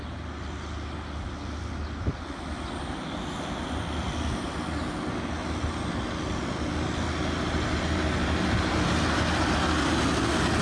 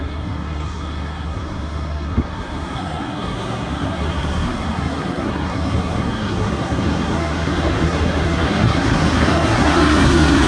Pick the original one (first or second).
first